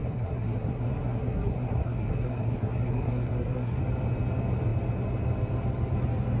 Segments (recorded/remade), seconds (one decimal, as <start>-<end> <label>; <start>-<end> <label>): 0.0-3.8 remade; 3.8-6.4 recorded